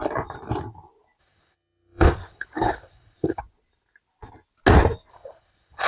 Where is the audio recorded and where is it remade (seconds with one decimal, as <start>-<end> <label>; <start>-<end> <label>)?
0.0-1.2 recorded; 1.2-3.4 remade; 3.4-5.1 recorded; 5.1-5.9 remade